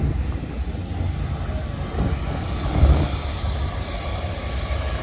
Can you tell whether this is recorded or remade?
recorded